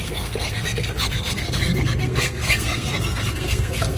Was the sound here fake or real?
fake